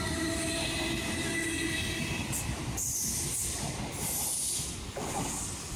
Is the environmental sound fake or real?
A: real